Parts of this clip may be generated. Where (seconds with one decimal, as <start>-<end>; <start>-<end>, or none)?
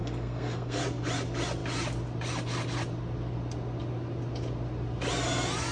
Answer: 0.0-0.8